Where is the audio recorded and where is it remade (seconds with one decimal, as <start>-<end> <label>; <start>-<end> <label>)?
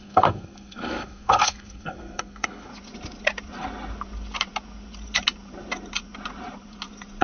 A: 0.0-2.7 remade; 2.7-7.2 recorded